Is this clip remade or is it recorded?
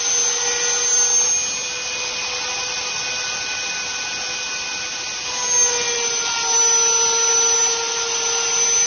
recorded